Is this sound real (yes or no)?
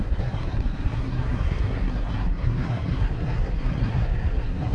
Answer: no